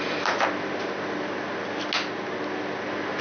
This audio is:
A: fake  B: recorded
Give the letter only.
B